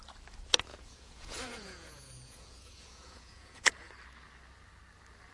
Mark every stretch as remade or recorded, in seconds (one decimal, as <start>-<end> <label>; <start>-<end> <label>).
0.0-0.7 recorded; 0.7-3.9 remade; 3.9-5.3 recorded